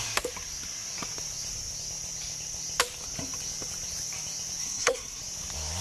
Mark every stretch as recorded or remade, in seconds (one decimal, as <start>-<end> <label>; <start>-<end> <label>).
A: 0.0-4.6 recorded; 4.6-5.2 remade; 5.2-5.8 recorded